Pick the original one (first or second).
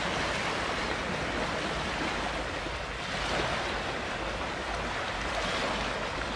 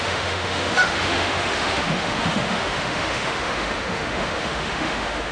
first